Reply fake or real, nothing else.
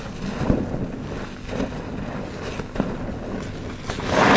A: real